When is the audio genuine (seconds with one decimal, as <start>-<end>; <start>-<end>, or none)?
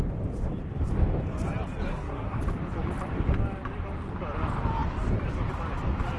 0.0-1.9; 2.4-6.2